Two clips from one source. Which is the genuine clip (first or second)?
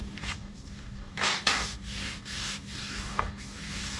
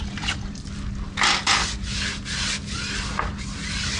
second